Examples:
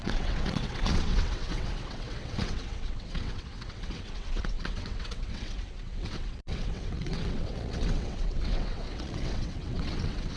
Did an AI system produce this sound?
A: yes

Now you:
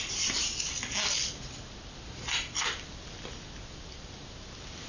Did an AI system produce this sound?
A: no